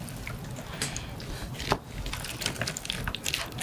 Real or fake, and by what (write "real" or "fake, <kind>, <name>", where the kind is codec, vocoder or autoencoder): real